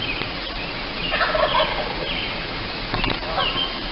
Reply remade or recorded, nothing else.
remade